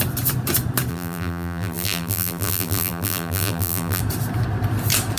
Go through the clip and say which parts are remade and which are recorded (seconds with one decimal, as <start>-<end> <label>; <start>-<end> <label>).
0.0-0.9 recorded; 0.9-4.0 remade; 4.0-5.2 recorded